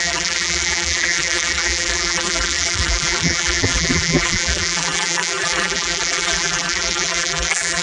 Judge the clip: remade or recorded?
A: remade